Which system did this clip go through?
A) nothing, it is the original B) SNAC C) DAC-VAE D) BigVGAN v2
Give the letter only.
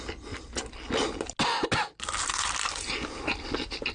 A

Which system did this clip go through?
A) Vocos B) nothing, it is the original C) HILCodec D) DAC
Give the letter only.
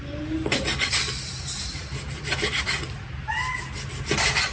B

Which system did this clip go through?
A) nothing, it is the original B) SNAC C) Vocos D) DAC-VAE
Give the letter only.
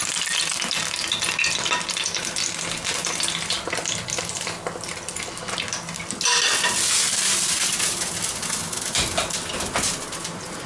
A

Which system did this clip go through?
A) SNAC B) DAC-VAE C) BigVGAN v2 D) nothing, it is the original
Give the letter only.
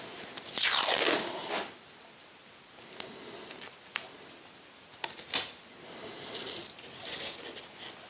D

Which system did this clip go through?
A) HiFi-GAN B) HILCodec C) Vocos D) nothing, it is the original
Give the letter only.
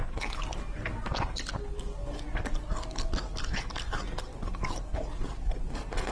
D